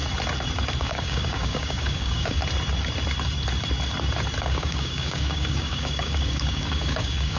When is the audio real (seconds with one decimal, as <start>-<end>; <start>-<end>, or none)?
0.0-0.8; 2.4-4.4